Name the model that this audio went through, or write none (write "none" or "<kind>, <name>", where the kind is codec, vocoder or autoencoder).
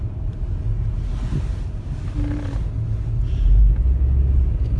none